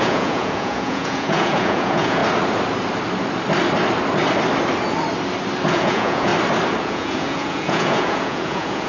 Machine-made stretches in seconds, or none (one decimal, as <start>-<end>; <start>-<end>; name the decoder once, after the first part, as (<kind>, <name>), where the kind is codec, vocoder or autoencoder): 0.0-2.2 (vocoder, Vocos); 5.7-6.3; 6.8-8.9